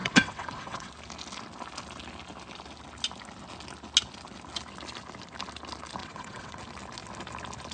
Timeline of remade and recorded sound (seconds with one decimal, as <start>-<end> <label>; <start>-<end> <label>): 0.0-0.9 remade; 0.9-6.0 recorded; 6.0-6.6 remade; 6.6-7.7 recorded